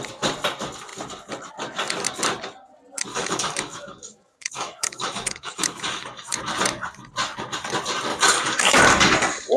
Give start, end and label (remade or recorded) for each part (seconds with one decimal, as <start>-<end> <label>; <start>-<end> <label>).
0.0-3.1 recorded; 3.1-6.4 remade; 6.4-8.1 recorded; 8.1-8.8 remade; 8.8-9.6 recorded